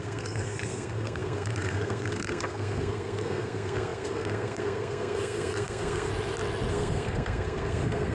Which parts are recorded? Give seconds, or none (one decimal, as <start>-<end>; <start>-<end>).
6.1-6.7